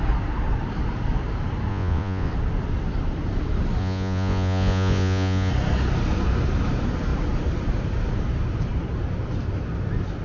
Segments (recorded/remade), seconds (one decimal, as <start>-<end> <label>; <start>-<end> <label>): 0.0-1.7 recorded; 1.7-2.3 remade; 2.3-3.8 recorded; 3.8-5.5 remade; 5.5-10.2 recorded